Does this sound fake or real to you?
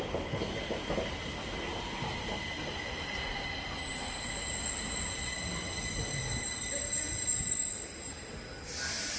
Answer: real